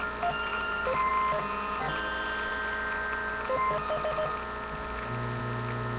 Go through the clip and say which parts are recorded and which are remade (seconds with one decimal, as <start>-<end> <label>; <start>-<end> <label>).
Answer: 0.0-0.5 recorded; 0.5-1.1 remade; 1.1-6.0 recorded